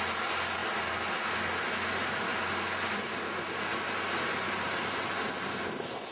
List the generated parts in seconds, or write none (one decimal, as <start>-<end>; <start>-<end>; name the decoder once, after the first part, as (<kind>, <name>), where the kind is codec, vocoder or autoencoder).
none